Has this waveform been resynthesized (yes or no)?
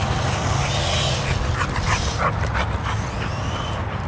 no